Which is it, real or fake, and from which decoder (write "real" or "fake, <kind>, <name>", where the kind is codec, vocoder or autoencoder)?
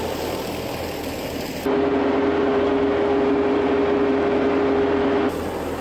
real